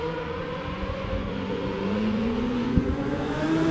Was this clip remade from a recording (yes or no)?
yes